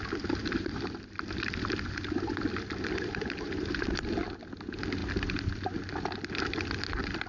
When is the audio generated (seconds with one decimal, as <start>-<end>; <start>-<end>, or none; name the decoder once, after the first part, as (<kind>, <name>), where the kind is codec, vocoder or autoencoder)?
0.4-4.1 (vocoder, BigVGAN v2); 5.0-6.2